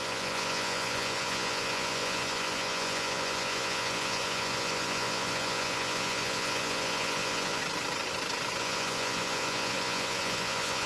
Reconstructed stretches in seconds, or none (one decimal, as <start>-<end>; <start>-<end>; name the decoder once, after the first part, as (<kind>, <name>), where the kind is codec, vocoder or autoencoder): 0.0-7.6 (vocoder, Vocos); 8.6-10.9

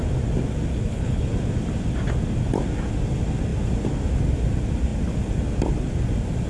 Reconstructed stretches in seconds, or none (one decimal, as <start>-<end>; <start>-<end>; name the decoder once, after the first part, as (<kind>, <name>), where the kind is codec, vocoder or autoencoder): 0.7-1.2 (codec, HILCodec)

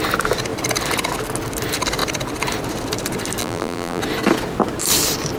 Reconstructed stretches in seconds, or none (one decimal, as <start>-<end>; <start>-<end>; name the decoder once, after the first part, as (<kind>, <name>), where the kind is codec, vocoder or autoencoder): 3.4-4.0 (vocoder, BigVGAN v2)

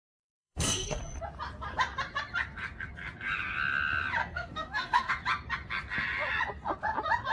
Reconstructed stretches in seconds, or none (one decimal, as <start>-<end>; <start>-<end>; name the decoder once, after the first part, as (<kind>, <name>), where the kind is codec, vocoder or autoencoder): 0.0-1.0 (codec, SNAC); 4.2-5.1

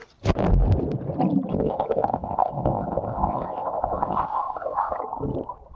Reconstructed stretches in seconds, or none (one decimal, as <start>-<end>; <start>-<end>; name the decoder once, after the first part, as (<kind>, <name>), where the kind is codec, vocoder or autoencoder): 1.5-5.0 (codec, ZipCodec)

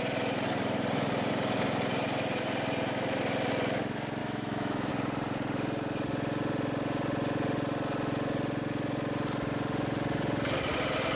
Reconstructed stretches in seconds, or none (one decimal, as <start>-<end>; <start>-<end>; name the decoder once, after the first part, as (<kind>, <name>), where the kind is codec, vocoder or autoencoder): 4.2-4.9 (autoencoder, DAC-VAE)

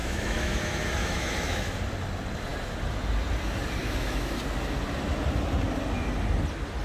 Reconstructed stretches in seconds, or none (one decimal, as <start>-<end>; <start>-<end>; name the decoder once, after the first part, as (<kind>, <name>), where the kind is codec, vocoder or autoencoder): 0.0-1.8 (autoencoder, DAC-VAE); 3.8-4.4